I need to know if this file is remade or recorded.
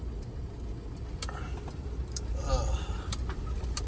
recorded